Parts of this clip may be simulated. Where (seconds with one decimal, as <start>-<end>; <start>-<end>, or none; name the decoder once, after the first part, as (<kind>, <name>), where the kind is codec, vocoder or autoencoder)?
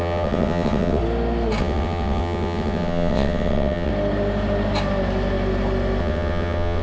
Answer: 0.0-1.0 (vocoder, WaveNeXt); 1.6-3.9; 6.0-6.8